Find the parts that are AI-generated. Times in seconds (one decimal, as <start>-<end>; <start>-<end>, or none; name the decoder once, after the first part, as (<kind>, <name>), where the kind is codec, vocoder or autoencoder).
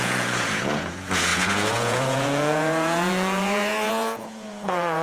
0.0-5.0 (vocoder, Vocos)